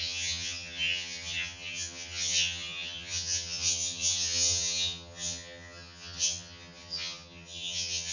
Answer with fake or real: fake